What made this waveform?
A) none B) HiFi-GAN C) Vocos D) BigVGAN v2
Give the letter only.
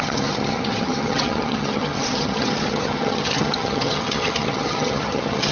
B